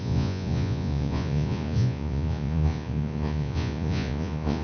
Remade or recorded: remade